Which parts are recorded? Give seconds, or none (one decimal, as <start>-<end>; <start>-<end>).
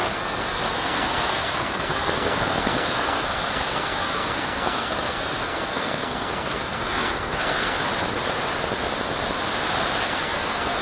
7.8-10.0